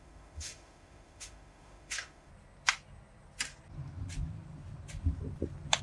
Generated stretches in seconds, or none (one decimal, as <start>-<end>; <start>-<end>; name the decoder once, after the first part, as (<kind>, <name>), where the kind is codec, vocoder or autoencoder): 0.0-2.3 (autoencoder, DAC-VAE)